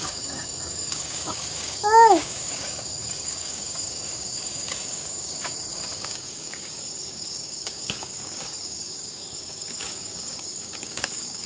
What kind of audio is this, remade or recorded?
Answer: remade